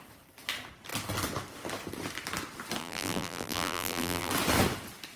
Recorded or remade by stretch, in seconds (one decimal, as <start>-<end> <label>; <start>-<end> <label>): 0.0-2.8 recorded; 2.8-4.3 remade; 4.3-5.2 recorded